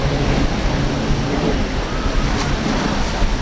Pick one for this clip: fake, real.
real